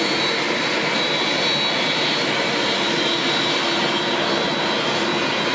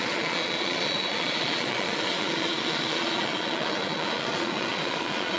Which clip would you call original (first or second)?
first